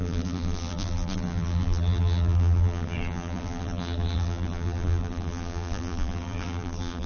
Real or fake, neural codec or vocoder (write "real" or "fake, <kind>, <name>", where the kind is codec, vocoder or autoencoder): fake, vocoder, BigVGAN v2